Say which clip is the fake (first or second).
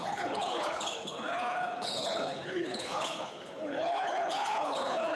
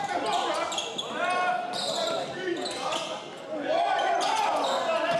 first